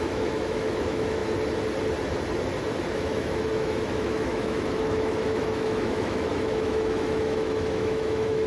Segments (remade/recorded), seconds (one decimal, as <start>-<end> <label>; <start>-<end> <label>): 0.0-1.2 remade; 1.2-2.9 recorded; 2.9-8.5 remade